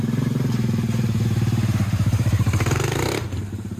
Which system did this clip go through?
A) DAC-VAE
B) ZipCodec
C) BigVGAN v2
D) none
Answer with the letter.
C